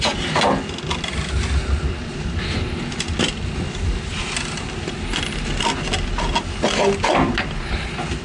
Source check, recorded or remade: recorded